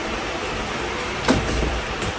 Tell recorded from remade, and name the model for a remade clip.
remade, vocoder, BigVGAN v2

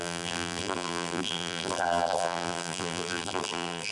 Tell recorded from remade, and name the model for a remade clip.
remade, vocoder, BigVGAN v2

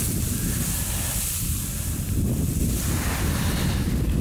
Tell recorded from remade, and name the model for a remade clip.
recorded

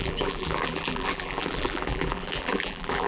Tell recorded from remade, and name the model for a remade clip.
remade, vocoder, BigVGAN v2